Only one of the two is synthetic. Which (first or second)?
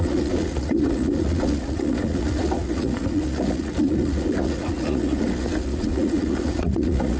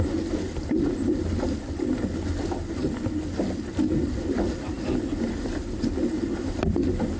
first